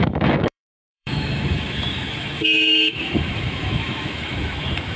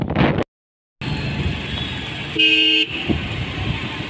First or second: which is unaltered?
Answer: second